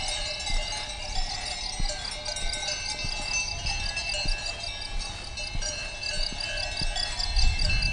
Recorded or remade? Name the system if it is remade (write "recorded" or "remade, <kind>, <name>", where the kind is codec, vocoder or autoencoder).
recorded